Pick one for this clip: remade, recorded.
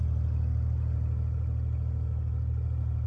recorded